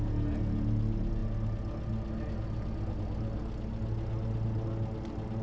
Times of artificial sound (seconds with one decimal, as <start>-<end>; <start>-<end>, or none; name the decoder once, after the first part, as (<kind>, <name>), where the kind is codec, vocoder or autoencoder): none